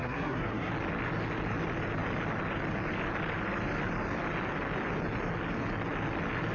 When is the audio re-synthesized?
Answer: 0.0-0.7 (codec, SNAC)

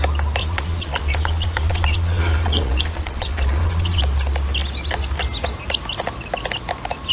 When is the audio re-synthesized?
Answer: 0.4-4.0 (vocoder, Vocos)

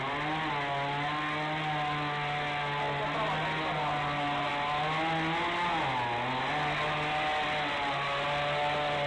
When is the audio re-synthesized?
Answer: none

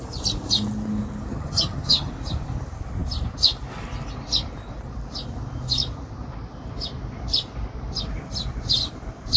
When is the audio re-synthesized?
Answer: 1.3-2.1 (vocoder, HiFi-GAN)

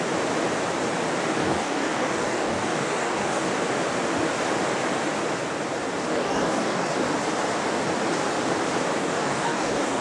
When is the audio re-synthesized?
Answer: 1.4-3.5 (codec, DAC); 6.1-7.1; 9.0-10.0

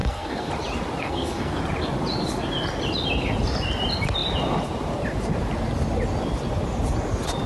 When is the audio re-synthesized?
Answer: 0.0-0.5 (codec, SNAC); 1.0-1.6

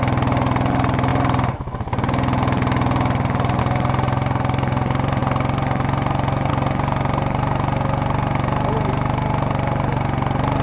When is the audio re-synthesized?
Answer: none